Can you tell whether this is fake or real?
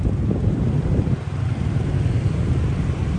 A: fake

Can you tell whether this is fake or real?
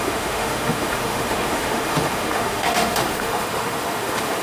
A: fake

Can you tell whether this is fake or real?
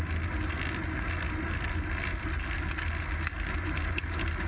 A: real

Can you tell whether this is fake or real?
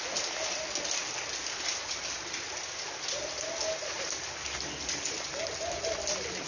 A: real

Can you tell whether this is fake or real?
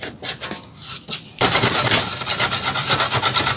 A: real